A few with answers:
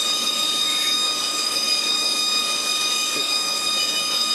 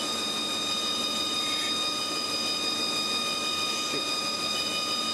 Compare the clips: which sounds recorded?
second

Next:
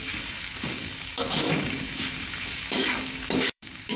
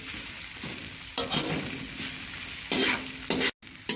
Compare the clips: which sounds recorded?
second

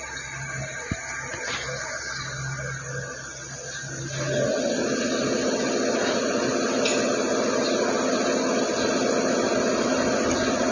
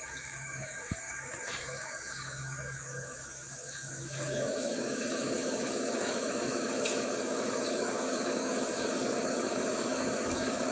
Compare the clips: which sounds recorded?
first